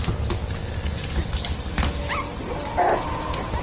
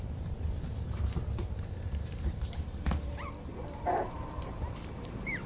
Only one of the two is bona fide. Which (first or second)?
first